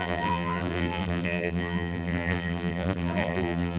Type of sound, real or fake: fake